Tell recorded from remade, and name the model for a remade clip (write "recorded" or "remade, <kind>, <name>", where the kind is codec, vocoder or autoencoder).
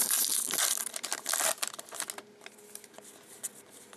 recorded